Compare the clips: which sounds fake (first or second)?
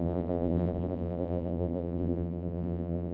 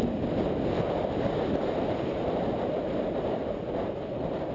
first